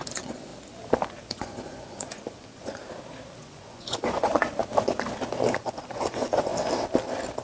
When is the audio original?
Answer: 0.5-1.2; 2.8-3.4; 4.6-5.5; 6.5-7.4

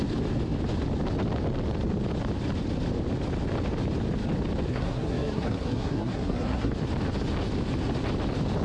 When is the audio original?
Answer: 0.0-4.7; 6.7-8.6

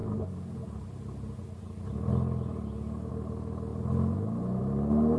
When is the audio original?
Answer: 0.0-5.2

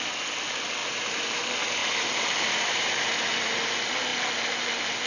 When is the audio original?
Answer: 0.0-0.8; 1.4-1.8; 2.9-5.1

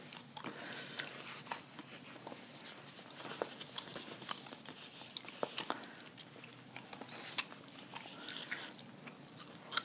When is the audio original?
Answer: 0.0-9.8

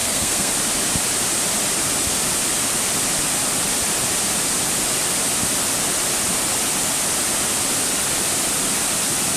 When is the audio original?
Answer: 0.5-9.4

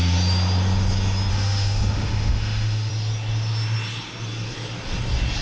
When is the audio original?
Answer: 0.0-1.3; 2.9-5.4